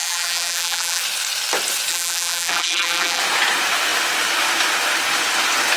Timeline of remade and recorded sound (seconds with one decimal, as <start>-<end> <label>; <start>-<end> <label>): 0.0-1.0 remade; 1.0-1.9 recorded; 1.9-3.2 remade; 3.2-5.8 recorded